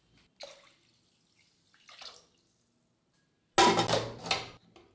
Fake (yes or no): no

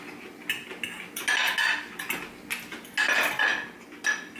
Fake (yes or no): no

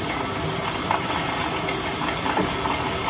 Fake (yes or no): no